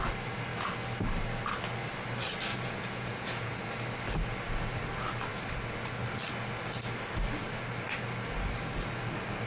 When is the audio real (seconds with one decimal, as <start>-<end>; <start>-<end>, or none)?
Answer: 0.0-2.5; 3.5-9.5